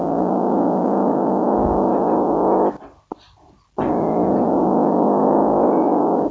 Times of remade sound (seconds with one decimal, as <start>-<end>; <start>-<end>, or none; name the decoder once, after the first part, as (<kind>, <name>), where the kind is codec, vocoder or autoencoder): 0.0-1.9 (codec, DAC); 4.5-6.3